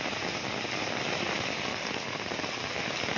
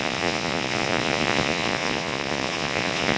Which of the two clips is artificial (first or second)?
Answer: second